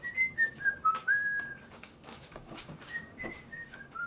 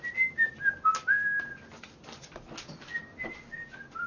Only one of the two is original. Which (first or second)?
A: second